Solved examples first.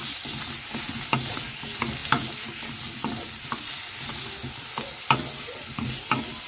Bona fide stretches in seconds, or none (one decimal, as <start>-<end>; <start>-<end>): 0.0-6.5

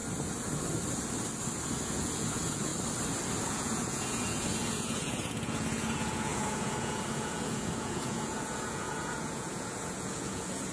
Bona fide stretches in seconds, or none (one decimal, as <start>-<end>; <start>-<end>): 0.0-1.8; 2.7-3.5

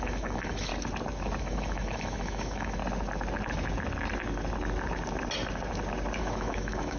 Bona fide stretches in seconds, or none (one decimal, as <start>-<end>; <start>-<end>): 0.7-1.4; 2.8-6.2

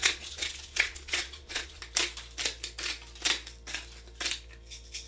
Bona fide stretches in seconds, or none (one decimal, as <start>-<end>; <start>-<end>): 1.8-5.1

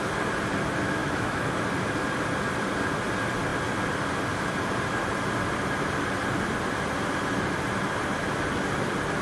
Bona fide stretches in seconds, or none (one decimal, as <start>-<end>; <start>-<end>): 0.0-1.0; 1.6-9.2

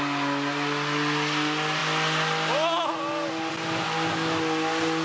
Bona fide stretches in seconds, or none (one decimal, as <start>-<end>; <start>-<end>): 0.0-5.0